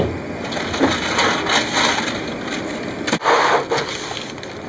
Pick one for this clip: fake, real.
real